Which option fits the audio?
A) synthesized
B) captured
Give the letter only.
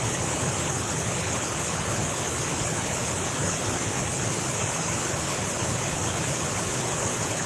A